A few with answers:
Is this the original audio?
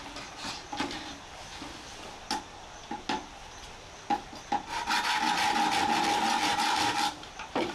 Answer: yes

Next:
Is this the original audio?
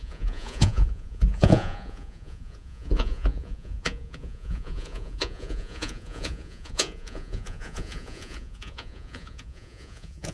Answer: no